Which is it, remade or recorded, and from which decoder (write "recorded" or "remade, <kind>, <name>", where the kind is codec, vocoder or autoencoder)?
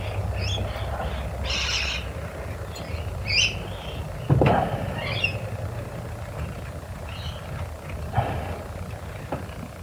recorded